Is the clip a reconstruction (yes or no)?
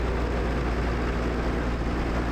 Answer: no